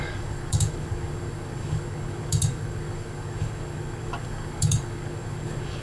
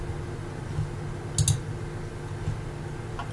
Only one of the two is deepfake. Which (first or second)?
first